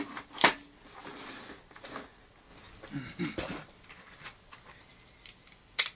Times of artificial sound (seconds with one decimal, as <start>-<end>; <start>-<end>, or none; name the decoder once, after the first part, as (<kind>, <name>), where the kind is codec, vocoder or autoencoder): none